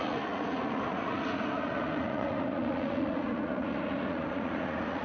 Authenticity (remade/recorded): remade